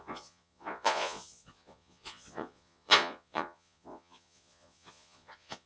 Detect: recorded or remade remade